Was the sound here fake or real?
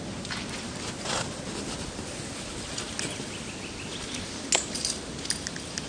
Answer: real